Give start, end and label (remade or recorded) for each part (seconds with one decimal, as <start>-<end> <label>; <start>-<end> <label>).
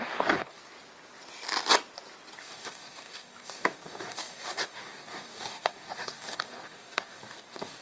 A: 0.0-0.6 remade; 0.6-2.4 recorded; 2.4-7.8 remade